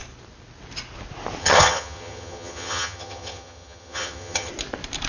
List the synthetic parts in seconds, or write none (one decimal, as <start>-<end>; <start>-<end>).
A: 1.4-4.5